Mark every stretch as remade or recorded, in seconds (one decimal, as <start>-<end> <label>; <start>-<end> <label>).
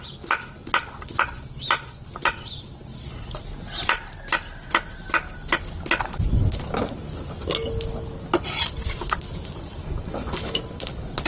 0.0-9.8 recorded; 9.8-10.6 remade; 10.6-11.3 recorded